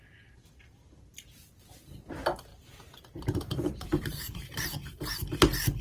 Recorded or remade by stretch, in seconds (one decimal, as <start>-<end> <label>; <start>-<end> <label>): 0.0-2.5 recorded; 2.5-3.4 remade; 3.4-3.9 recorded; 3.9-5.3 remade; 5.3-5.8 recorded